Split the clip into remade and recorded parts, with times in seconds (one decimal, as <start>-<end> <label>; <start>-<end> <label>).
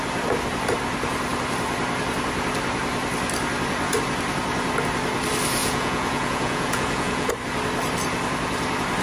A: 0.0-5.6 recorded; 5.6-7.3 remade; 7.3-9.0 recorded